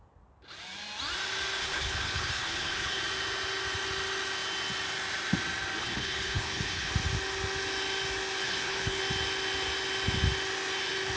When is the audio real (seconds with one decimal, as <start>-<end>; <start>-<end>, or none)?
0.0-1.6; 3.0-5.8; 6.9-8.4; 9.0-11.2